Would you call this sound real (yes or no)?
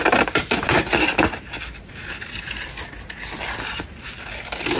yes